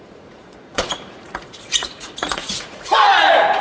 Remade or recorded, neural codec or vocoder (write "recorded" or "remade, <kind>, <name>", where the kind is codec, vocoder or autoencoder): remade, vocoder, Vocos